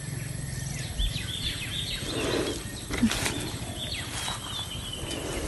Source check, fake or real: real